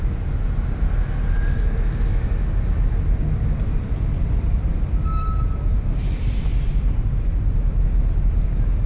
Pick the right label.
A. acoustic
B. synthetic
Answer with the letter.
A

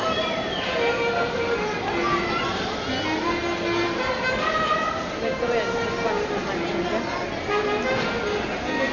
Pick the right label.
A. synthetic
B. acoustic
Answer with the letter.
B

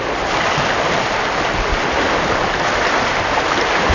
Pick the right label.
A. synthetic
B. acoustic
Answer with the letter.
B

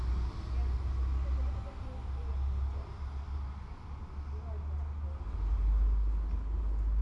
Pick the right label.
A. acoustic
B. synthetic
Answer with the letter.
A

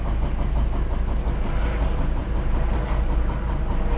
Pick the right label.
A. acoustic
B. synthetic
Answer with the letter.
A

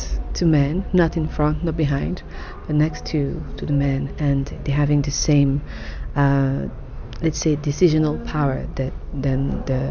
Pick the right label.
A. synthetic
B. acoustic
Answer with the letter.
B